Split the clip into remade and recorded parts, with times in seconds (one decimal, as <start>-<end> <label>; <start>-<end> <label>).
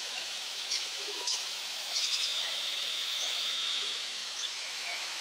0.0-5.2 remade